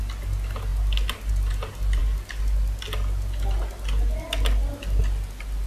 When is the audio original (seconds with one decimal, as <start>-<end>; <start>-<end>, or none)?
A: 0.0-5.7